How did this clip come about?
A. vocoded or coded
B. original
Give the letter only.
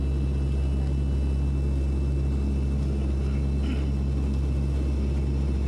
B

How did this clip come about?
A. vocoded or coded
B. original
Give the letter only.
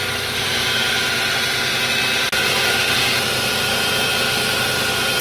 B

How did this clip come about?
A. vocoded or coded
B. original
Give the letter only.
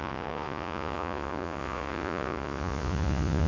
A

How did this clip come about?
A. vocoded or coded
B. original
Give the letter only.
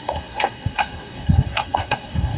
A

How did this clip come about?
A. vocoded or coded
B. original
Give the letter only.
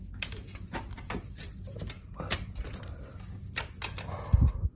B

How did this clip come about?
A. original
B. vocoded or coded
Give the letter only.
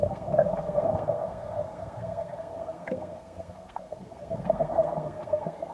B